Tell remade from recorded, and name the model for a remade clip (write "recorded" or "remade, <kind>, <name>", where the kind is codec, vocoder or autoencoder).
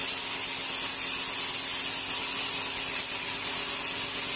recorded